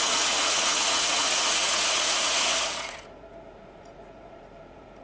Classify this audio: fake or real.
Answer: fake